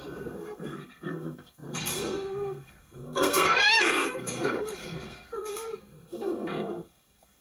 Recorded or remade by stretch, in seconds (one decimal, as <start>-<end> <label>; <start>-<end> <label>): 0.0-7.4 remade